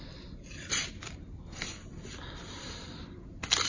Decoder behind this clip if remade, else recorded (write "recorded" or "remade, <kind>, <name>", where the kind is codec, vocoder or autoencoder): recorded